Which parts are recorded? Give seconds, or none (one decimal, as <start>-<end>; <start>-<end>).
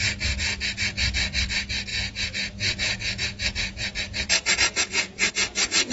0.0-1.9; 5.3-5.9